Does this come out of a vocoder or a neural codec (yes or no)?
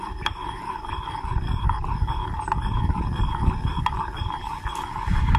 no